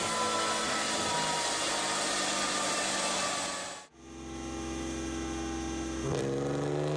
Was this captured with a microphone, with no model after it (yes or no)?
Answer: yes